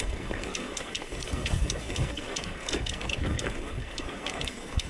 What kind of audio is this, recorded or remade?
remade